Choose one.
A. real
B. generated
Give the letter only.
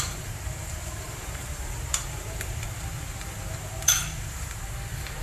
B